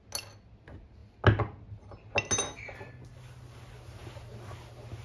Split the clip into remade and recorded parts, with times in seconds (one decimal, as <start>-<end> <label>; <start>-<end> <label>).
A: 0.0-5.0 recorded